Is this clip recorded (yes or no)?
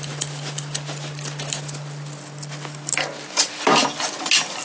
yes